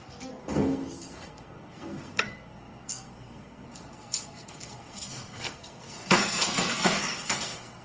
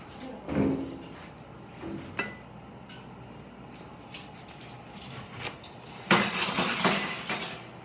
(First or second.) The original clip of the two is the second